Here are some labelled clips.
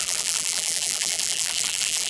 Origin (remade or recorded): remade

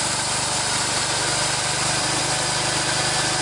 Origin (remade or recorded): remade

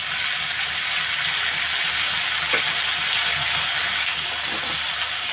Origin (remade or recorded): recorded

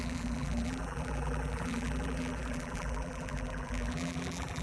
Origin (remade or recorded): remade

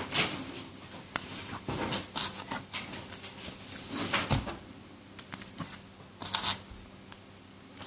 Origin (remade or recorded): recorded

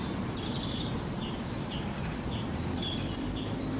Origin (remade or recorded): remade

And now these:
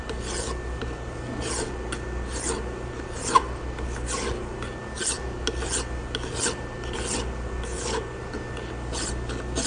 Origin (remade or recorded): recorded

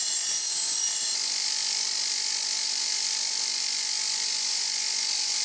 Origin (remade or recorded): remade